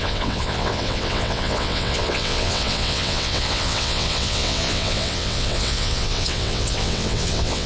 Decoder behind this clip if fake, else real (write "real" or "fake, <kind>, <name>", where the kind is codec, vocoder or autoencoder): fake, vocoder, WaveNeXt